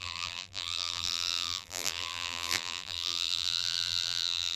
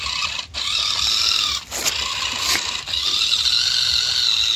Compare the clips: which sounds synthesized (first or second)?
first